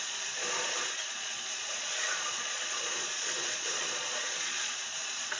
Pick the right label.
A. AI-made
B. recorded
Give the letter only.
A